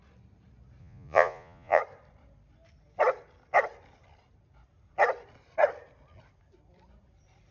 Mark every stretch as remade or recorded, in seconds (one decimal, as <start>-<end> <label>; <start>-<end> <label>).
0.0-0.8 recorded; 0.8-1.8 remade; 1.8-7.5 recorded